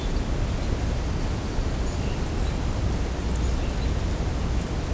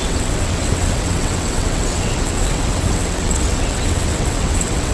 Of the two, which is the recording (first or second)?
first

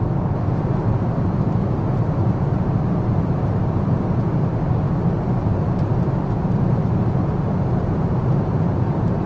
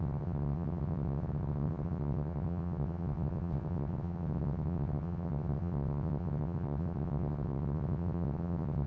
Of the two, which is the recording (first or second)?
first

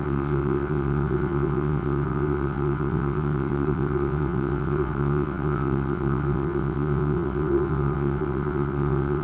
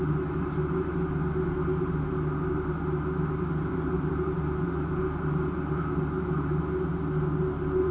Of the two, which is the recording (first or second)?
second